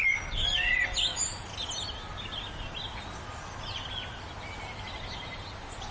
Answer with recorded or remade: recorded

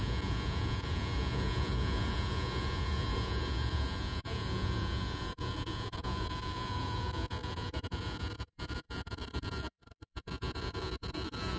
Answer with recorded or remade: remade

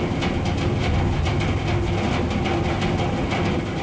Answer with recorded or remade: recorded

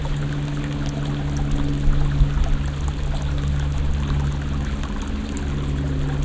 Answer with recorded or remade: recorded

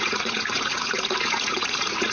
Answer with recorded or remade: remade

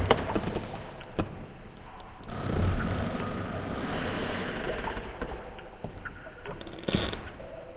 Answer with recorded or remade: recorded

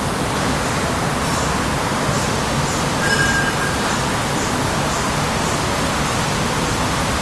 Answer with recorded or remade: recorded